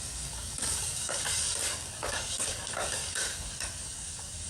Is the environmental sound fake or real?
fake